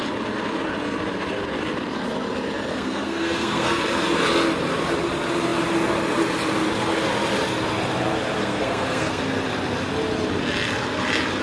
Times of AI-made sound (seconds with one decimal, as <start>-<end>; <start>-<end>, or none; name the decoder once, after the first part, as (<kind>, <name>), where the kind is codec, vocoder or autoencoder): 2.7-3.8 (codec, SNAC); 8.4-9.2